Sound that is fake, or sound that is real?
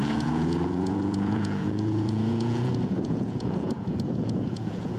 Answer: fake